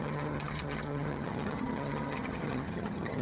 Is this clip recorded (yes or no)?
no